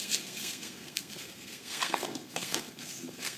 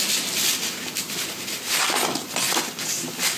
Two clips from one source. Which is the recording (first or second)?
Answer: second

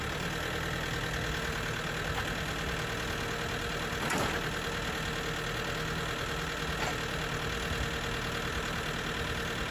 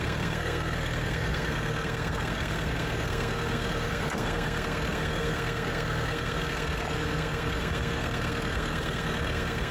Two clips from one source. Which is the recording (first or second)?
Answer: first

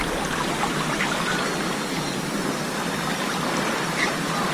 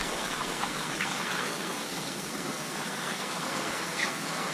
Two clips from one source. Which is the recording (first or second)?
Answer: first